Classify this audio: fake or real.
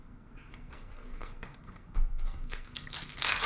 fake